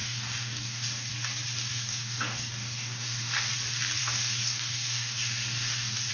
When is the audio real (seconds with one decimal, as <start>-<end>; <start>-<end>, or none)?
1.1-1.7; 3.5-4.0